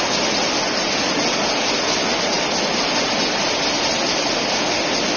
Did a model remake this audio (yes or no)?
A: no